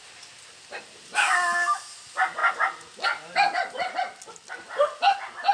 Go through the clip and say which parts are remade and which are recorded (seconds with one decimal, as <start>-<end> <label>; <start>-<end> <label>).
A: 0.0-5.5 recorded